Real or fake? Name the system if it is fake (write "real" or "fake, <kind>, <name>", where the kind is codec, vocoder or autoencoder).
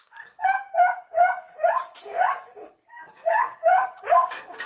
fake, codec, DAC